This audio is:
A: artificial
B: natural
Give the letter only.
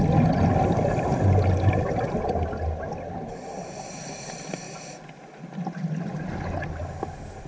B